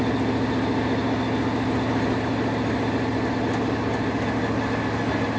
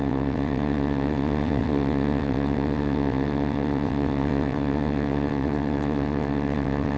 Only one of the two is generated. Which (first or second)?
second